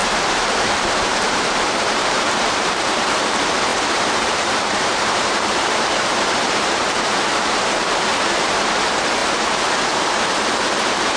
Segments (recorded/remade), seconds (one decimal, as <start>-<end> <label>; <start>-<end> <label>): 0.0-9.2 remade; 9.2-10.1 recorded; 10.1-11.2 remade